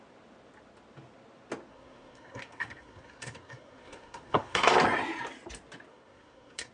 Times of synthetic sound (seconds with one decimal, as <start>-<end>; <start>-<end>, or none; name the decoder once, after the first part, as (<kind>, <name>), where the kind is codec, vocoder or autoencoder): 1.7-4.7 (codec, SNAC); 5.9-6.7